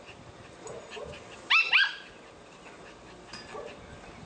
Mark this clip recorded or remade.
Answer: recorded